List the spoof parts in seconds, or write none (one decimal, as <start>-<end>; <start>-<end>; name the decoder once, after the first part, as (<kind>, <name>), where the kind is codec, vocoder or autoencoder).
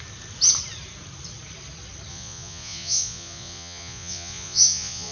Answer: 2.1-5.1 (vocoder, Vocos)